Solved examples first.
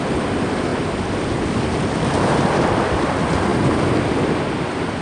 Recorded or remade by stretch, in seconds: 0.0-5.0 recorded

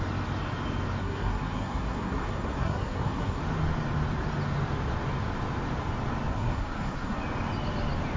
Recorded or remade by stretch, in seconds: 0.0-1.0 recorded; 1.0-3.4 remade; 3.4-6.3 recorded; 6.3-7.2 remade; 7.2-8.2 recorded